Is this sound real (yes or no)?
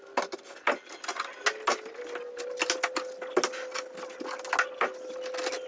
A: yes